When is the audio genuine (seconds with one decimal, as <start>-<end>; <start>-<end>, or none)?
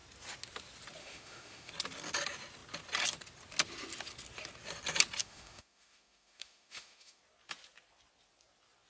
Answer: 0.0-1.0; 1.7-5.2; 7.2-8.9